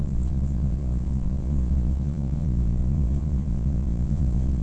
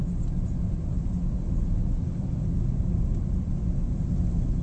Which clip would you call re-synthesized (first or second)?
first